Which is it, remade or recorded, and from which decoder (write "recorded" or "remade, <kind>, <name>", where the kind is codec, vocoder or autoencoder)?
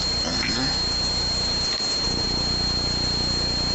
recorded